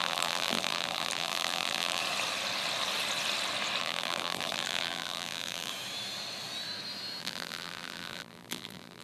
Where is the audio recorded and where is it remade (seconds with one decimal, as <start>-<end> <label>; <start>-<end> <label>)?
0.0-2.0 remade; 2.0-3.8 recorded; 3.8-5.7 remade; 5.7-7.2 recorded; 7.2-9.0 remade